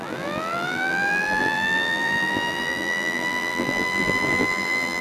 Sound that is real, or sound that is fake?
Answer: fake